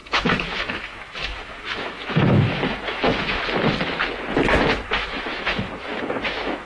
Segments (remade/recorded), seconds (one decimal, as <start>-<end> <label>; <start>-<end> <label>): 0.0-3.4 remade; 3.4-5.0 recorded; 5.0-6.7 remade